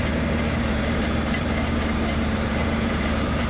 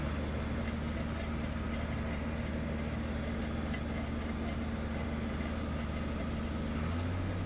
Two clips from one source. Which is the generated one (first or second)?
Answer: first